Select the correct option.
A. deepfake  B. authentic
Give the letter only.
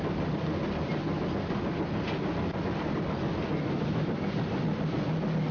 B